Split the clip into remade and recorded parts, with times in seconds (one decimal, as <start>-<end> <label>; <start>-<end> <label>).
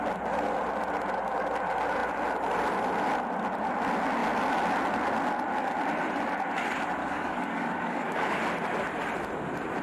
0.0-7.0 recorded; 7.0-8.4 remade; 8.4-9.8 recorded